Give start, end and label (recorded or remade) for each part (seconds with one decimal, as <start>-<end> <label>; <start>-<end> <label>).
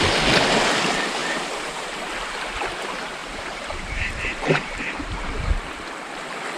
0.0-1.2 recorded; 1.2-2.1 remade; 2.1-3.2 recorded; 3.2-5.5 remade; 5.5-6.6 recorded